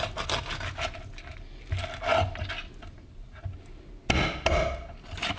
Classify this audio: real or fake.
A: real